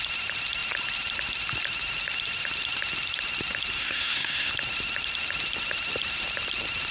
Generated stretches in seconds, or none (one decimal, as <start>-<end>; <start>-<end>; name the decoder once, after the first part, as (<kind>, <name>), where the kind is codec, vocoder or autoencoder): 3.8-4.5 (codec, SNAC)